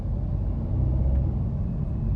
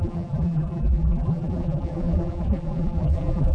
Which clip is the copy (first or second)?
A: second